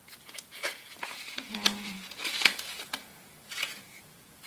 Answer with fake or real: fake